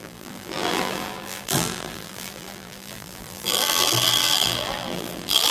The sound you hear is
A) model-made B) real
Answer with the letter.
A